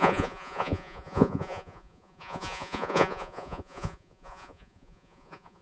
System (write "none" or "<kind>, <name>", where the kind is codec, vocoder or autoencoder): vocoder, Vocos